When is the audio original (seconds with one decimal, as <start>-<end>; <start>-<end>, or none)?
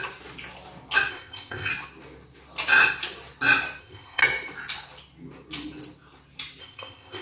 0.0-1.1; 1.7-3.8; 4.2-6.6